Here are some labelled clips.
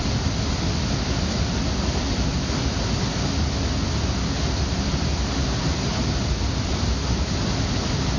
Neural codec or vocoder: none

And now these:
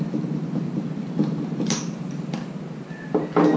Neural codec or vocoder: none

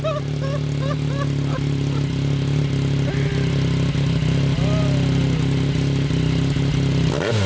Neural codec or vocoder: none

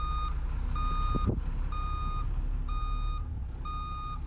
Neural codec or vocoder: none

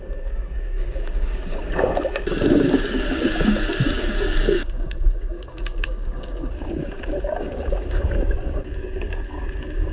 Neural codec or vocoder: codec, DAC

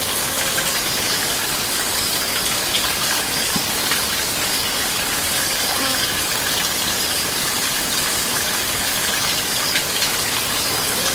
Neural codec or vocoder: codec, DAC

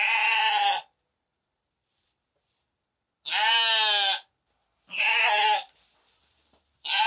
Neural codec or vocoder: none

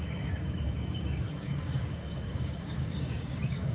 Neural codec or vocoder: codec, DAC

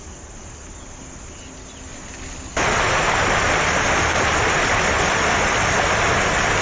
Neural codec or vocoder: none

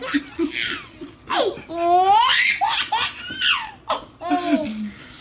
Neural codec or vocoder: none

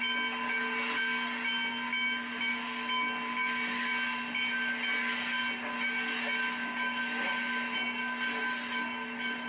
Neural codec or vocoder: none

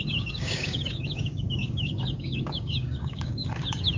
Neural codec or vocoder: codec, DAC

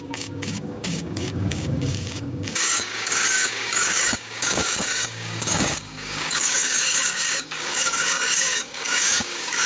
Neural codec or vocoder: codec, DAC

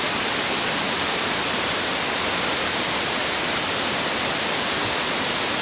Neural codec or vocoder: none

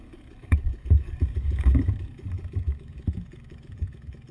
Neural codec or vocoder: codec, DAC